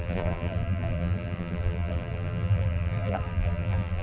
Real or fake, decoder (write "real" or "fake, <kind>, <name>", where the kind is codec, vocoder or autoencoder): fake, vocoder, BigVGAN v2